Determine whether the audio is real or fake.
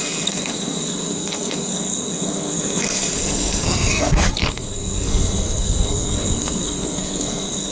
fake